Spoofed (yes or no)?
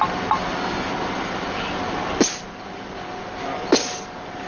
no